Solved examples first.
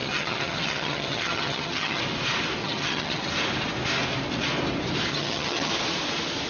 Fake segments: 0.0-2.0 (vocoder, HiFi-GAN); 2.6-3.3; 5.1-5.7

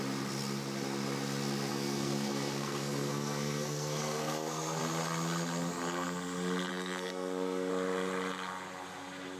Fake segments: 1.7-4.8 (codec, SNAC); 6.7-7.7

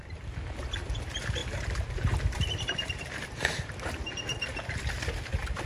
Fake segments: 1.4-4.7 (vocoder, BigVGAN v2)